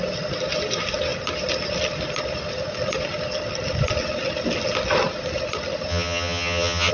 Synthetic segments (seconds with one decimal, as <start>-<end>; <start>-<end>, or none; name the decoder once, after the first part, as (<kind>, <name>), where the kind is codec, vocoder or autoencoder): 5.9-6.9 (vocoder, HiFi-GAN)